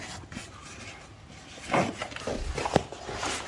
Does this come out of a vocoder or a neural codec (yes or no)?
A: no